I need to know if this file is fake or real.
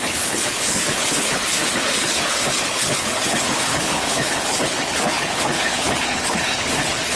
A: fake